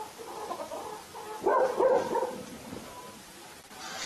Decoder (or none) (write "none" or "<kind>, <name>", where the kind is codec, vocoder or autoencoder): vocoder, BigVGAN v2